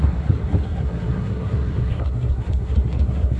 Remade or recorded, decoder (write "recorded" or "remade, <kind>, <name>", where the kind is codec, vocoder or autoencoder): remade, codec, SNAC